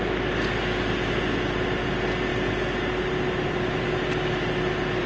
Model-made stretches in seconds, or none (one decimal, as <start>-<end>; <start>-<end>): none